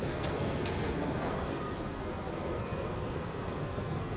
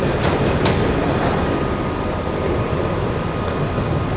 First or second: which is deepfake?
first